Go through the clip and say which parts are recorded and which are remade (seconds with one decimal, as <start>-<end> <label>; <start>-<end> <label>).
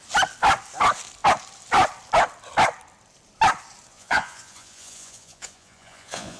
0.0-3.9 recorded; 3.9-6.4 remade